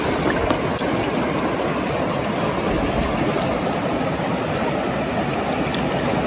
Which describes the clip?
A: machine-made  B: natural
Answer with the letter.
B